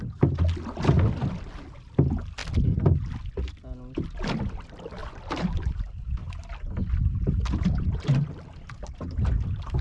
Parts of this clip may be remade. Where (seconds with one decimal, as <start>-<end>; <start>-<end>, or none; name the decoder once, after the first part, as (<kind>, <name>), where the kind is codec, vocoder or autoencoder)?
none